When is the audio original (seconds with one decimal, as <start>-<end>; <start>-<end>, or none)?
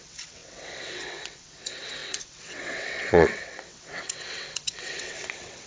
none